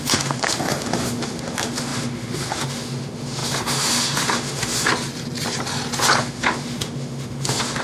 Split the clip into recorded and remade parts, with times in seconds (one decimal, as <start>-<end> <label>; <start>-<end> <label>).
0.0-4.9 remade; 4.9-6.2 recorded; 6.2-7.8 remade